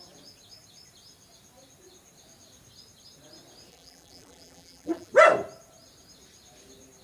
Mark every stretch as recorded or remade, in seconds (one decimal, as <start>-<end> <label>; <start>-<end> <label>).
0.0-3.7 recorded; 3.7-5.1 remade; 5.1-7.0 recorded